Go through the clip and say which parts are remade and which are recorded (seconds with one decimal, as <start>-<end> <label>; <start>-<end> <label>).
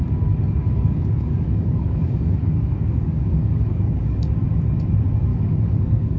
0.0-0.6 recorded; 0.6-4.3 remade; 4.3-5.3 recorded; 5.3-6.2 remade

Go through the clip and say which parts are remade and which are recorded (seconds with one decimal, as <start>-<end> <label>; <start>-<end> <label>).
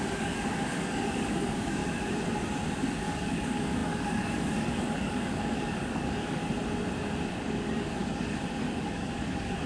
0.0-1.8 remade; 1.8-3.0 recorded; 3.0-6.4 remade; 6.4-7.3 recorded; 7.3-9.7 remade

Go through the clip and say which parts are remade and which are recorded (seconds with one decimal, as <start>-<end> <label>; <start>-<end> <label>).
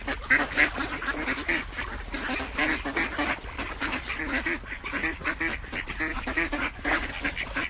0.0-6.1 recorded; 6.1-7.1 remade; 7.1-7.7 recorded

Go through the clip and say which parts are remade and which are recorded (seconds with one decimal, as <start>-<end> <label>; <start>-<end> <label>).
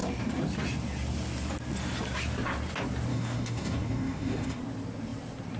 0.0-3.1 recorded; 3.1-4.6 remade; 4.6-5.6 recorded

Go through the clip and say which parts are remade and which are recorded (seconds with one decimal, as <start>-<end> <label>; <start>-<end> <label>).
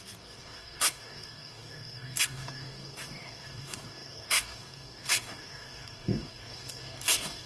0.0-7.5 remade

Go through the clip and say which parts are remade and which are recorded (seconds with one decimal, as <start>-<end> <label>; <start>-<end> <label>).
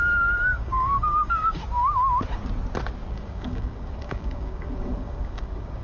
0.0-1.6 remade; 1.6-3.1 recorded; 3.1-5.8 remade